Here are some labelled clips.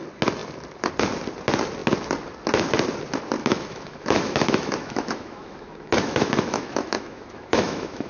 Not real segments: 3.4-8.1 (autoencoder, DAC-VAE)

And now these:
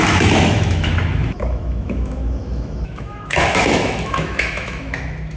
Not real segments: 0.0-5.4 (autoencoder, DAC-VAE)

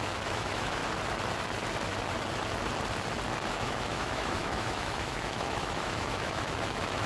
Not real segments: 0.0-0.8 (autoencoder, DAC-VAE); 3.5-7.1

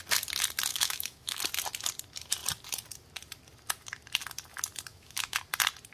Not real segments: 0.7-1.4 (autoencoder, DAC-VAE); 4.9-5.4

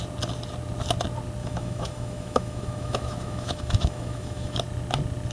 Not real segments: 1.4-4.6 (autoencoder, DAC-VAE)

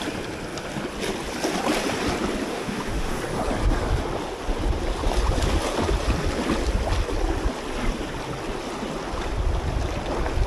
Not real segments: 2.5-3.2 (autoencoder, DAC-VAE)

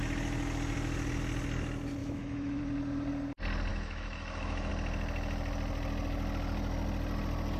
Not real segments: 2.0-2.6 (autoencoder, DAC-VAE); 3.7-4.7